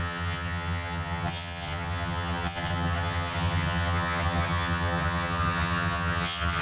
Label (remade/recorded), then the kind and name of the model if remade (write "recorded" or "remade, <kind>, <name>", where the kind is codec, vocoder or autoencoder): remade, vocoder, HiFi-GAN